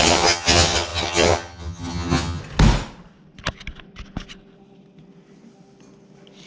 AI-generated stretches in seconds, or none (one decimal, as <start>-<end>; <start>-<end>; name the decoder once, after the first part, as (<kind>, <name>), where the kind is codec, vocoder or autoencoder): 0.0-2.4 (vocoder, HiFi-GAN)

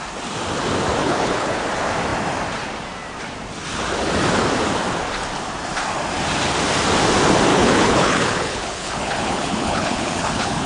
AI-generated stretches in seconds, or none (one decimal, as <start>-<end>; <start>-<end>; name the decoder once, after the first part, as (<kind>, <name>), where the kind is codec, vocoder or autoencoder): 1.0-1.6 (codec, HILCodec); 7.5-10.7

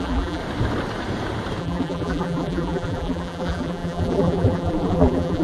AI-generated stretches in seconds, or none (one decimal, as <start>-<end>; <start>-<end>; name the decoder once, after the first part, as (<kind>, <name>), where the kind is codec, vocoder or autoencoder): 0.0-0.4 (vocoder, BigVGAN v2); 1.6-5.4

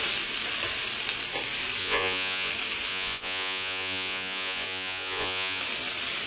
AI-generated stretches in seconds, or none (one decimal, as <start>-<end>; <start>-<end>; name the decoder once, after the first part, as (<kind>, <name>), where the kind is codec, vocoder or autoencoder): 1.8-2.5 (vocoder, Vocos); 2.9-5.6

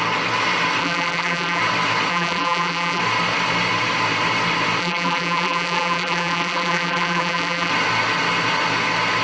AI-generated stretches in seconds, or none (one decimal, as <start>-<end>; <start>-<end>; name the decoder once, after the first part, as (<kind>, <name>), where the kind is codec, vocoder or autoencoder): 0.8-1.6 (vocoder, BigVGAN v2); 2.1-3.0; 4.8-7.7